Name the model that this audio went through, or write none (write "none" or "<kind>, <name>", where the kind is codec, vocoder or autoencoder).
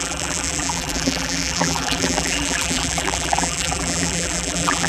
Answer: vocoder, BigVGAN v2